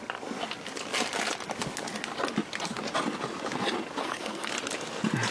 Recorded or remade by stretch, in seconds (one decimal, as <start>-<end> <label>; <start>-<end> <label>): 0.0-4.0 recorded; 4.0-4.5 remade; 4.5-5.3 recorded